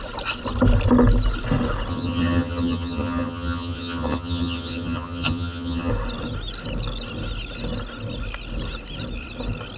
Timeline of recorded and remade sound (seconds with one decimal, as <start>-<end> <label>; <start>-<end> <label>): 0.0-1.9 recorded; 1.9-5.9 remade; 5.9-9.8 recorded